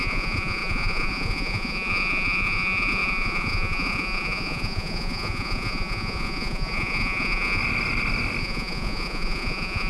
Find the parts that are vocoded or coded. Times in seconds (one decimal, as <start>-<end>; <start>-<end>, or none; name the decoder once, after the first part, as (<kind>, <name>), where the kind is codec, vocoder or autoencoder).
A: 0.0-7.6 (vocoder, Vocos); 8.4-9.9

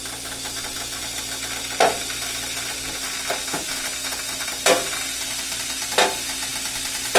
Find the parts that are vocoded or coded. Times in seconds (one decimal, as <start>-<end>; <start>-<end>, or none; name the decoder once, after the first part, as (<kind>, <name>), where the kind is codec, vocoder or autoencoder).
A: none

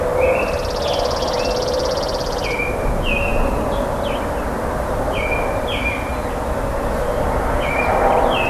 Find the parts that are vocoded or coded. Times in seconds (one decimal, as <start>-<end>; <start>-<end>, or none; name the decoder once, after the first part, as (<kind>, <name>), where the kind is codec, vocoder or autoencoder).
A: none

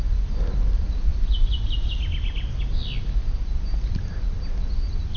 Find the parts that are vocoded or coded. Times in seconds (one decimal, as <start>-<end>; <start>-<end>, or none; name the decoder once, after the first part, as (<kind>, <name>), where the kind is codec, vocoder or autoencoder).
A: none

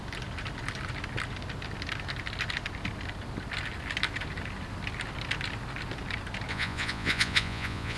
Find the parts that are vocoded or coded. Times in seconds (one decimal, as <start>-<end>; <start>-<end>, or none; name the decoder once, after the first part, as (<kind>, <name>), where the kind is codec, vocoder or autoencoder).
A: 6.5-8.0 (vocoder, Vocos)

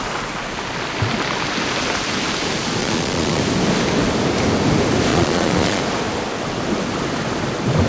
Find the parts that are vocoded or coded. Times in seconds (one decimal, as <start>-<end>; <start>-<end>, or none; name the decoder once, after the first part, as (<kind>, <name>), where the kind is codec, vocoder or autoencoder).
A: 2.8-3.4 (vocoder, Vocos); 5.1-5.8

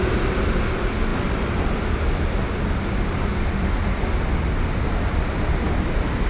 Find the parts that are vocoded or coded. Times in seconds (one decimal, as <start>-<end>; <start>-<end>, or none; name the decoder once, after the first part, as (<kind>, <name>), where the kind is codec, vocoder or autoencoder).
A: none